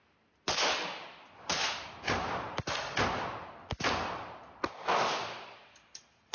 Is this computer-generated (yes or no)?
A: no